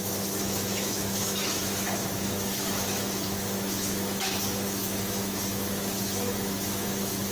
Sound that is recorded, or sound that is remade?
remade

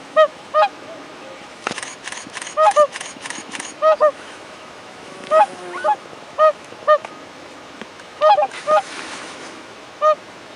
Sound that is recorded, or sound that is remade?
remade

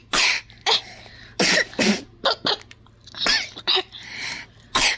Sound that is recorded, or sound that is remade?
recorded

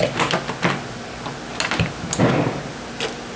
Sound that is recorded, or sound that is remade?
recorded